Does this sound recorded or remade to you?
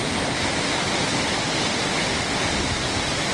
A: recorded